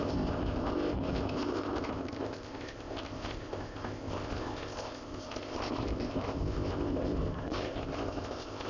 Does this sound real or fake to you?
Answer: fake